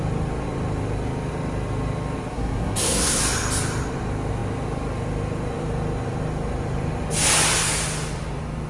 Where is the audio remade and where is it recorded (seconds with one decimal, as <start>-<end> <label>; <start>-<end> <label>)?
0.0-2.3 recorded; 2.3-3.2 remade; 3.2-8.7 recorded